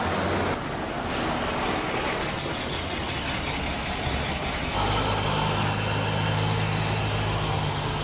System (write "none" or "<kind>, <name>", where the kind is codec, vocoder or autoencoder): none